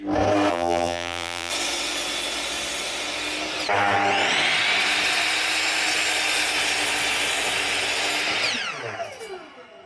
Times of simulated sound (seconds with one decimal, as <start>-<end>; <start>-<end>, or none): 0.5-1.5